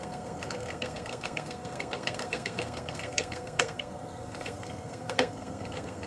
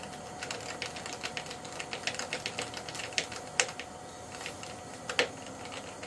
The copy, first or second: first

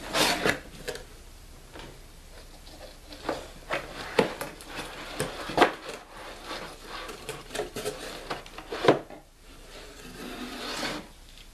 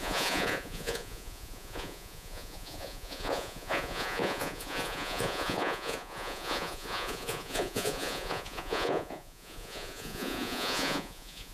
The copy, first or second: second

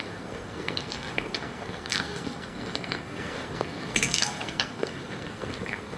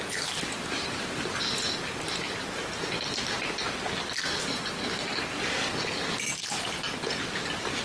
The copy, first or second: first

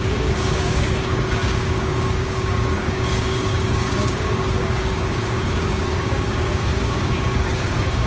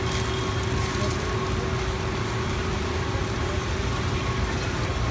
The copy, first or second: first